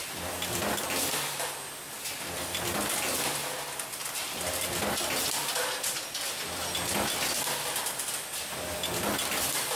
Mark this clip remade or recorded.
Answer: recorded